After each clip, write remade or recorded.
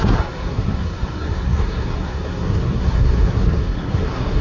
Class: remade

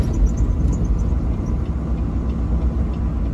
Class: recorded